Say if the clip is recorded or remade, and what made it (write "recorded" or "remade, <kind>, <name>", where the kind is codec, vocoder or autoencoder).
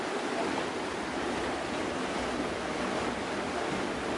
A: recorded